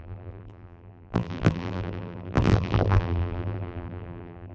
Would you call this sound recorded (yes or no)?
no